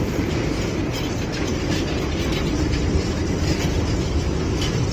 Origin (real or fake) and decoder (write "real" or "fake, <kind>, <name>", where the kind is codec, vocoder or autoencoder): real